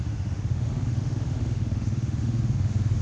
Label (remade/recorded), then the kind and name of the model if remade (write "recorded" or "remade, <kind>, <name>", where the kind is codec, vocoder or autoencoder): remade, autoencoder, DAC-VAE